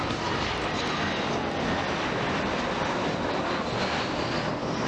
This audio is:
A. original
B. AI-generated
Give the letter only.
A